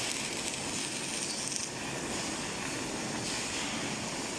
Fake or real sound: real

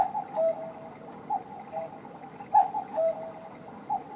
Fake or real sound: real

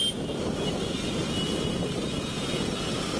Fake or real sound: real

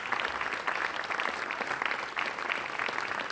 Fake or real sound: real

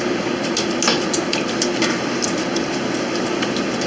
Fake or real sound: real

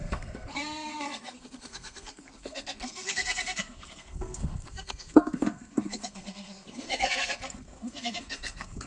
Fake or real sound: fake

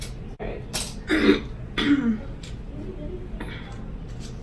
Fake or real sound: real